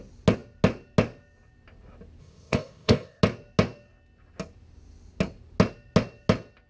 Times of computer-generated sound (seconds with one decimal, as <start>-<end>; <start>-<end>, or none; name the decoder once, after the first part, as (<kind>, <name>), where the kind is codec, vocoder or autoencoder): 2.2-3.2 (codec, ZipCodec)